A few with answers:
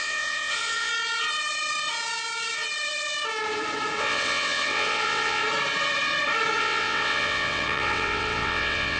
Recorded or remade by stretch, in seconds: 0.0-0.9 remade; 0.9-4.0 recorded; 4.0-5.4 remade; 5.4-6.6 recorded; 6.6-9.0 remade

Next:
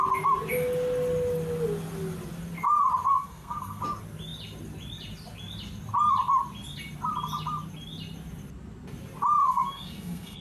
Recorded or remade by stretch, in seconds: 0.0-3.1 recorded; 3.1-3.8 remade; 3.8-9.4 recorded; 9.4-10.4 remade

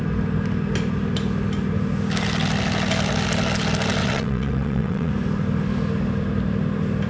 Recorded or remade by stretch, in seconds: 0.0-4.0 recorded; 4.0-5.1 remade; 5.1-7.1 recorded

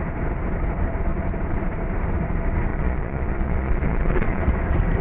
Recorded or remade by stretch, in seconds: 0.0-2.7 recorded; 2.7-4.4 remade; 4.4-5.0 recorded

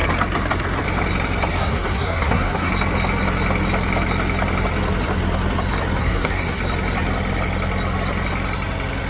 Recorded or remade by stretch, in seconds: 0.0-1.5 recorded; 1.5-2.7 remade; 2.7-6.0 recorded; 6.0-6.6 remade; 6.6-9.1 recorded

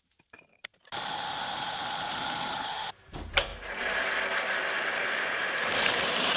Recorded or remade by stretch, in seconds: 0.0-3.5 remade; 3.5-5.0 recorded; 5.0-6.4 remade

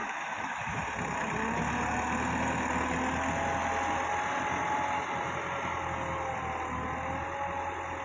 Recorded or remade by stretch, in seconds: 0.0-0.8 remade; 0.8-8.0 recorded

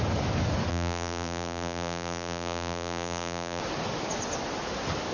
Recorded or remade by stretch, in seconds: 0.0-0.7 recorded; 0.7-3.6 remade; 3.6-5.1 recorded